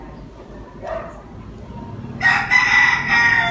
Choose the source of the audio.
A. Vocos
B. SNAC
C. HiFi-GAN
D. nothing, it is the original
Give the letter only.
D